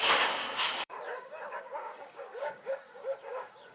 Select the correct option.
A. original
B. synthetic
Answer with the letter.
B